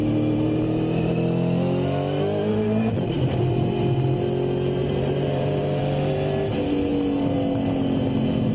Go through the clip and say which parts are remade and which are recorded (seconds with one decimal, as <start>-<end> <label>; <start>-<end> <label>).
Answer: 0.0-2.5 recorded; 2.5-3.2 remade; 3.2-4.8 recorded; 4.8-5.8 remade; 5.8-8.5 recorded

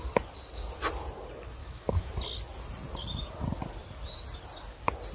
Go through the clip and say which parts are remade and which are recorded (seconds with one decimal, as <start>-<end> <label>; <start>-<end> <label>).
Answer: 0.0-1.6 recorded; 1.6-2.1 remade; 2.1-5.1 recorded

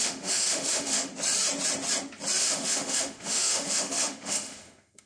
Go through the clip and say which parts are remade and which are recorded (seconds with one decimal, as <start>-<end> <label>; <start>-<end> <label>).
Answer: 0.0-1.1 remade; 1.1-2.4 recorded; 2.4-5.1 remade

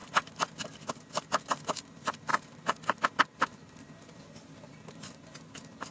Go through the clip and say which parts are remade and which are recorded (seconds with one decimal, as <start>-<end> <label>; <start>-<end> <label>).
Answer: 0.0-2.3 recorded; 2.3-5.0 remade; 5.0-5.9 recorded

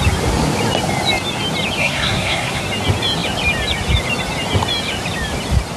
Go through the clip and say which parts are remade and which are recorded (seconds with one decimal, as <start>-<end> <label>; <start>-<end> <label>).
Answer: 0.0-1.8 recorded; 1.8-2.6 remade; 2.6-5.8 recorded